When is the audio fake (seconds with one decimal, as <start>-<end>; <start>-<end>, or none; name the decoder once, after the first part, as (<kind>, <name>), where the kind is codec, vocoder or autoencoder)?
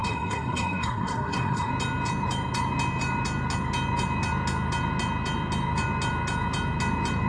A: 0.0-1.7 (codec, SNAC)